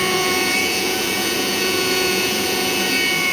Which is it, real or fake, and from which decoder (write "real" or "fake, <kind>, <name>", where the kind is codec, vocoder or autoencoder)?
fake, vocoder, Vocos